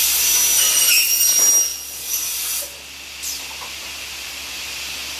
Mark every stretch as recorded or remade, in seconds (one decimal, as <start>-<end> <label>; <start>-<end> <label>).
0.0-5.2 recorded